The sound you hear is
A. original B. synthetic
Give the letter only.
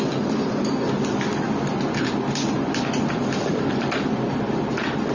A